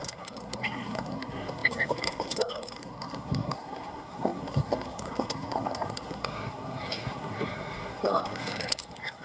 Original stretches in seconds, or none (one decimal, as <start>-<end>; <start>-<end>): none